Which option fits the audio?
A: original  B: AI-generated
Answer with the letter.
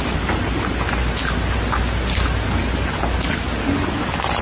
A